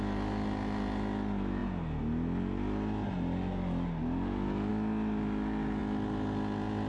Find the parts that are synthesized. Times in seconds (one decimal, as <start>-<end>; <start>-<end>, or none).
none